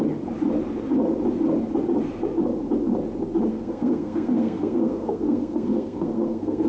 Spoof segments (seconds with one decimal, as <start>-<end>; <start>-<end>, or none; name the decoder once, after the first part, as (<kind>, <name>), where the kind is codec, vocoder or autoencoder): 3.5-6.7 (codec, SNAC)